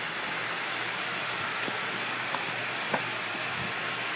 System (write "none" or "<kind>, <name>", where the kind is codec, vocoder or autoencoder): none